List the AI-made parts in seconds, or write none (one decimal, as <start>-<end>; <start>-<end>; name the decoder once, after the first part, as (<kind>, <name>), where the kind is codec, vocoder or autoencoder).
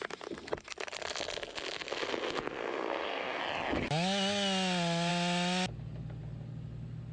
2.6-3.4 (codec, SNAC)